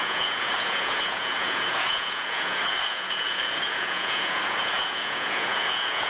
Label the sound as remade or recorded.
remade